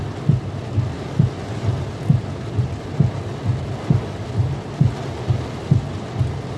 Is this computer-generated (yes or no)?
no